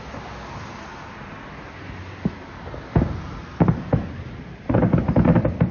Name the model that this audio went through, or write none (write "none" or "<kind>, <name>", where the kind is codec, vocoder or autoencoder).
none